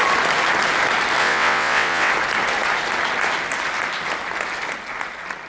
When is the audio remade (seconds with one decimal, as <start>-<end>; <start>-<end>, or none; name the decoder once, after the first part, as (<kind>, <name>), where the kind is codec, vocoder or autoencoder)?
1.2-2.1 (vocoder, WaveNeXt)